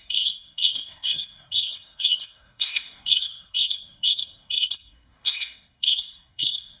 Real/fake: fake